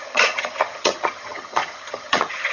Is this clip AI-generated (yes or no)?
yes